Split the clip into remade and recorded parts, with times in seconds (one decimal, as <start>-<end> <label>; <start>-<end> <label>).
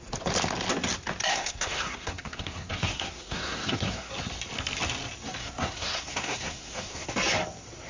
0.0-1.3 recorded; 1.3-4.1 remade; 4.1-5.4 recorded; 5.4-7.1 remade; 7.1-7.9 recorded